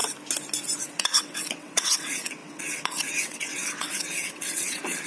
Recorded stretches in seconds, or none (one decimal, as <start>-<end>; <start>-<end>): 0.0-0.9